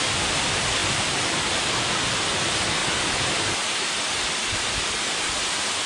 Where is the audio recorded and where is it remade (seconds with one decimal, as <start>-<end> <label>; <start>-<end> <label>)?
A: 0.0-5.9 recorded